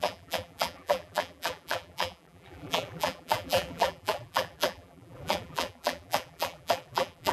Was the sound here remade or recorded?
remade